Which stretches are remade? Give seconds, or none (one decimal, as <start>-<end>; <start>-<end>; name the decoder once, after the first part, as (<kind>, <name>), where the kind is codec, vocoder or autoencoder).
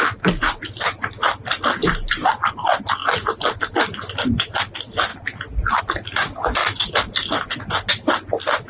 3.0-3.5 (vocoder, BigVGAN v2)